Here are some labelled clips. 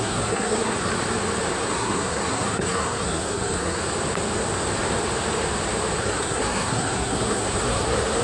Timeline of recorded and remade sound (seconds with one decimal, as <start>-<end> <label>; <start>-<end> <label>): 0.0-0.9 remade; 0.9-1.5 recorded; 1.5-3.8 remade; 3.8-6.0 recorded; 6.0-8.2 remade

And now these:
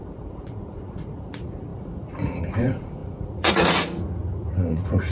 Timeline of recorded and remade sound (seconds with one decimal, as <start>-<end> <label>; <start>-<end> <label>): 0.0-5.1 remade

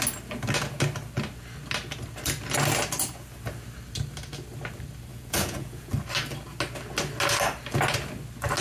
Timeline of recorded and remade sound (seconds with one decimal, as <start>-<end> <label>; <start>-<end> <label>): 0.0-5.1 recorded; 5.1-5.9 remade; 5.9-8.6 recorded

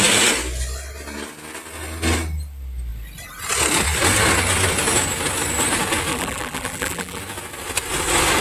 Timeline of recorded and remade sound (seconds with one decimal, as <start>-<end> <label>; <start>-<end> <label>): 0.0-6.1 recorded; 6.1-7.2 remade; 7.2-8.4 recorded

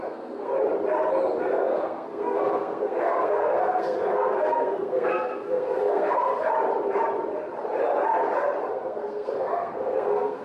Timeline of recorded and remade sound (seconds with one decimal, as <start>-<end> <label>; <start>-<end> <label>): 0.0-0.5 remade; 0.5-1.4 recorded; 1.4-6.3 remade; 6.3-8.7 recorded; 8.7-10.4 remade